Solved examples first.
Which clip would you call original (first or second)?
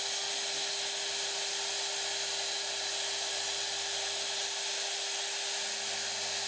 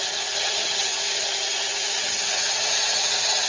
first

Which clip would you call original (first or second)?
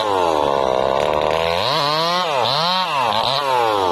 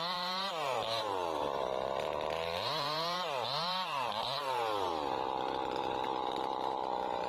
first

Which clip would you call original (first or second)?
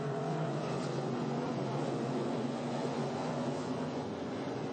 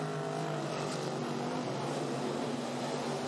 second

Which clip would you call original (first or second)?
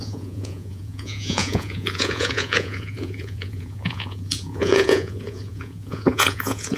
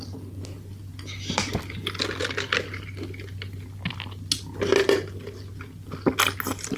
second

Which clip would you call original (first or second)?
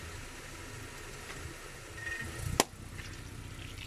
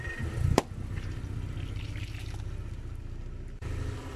first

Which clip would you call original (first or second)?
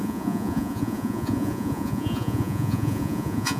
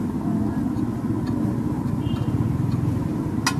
second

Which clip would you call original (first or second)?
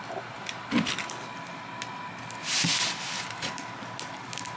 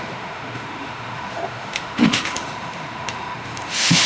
first